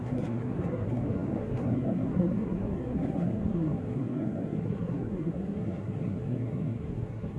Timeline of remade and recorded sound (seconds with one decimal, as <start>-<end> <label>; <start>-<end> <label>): 0.0-7.4 remade